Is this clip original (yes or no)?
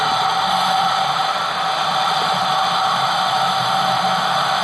yes